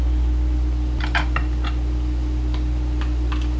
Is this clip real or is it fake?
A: real